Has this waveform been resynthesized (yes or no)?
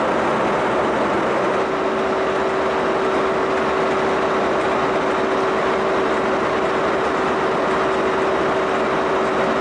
no